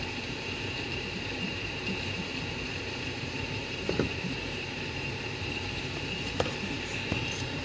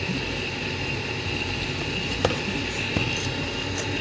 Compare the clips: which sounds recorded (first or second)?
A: second